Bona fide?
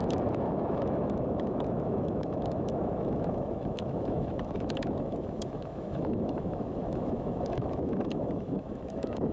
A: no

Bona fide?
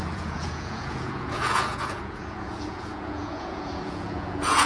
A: no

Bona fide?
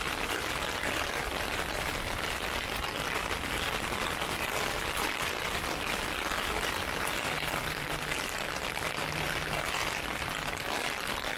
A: no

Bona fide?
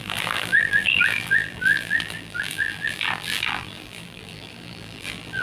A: no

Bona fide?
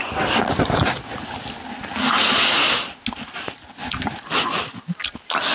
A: yes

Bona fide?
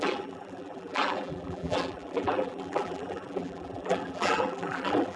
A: no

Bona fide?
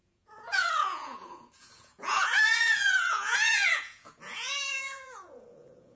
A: no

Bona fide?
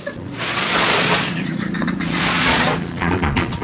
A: no